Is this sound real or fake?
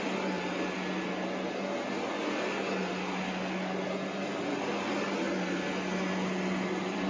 real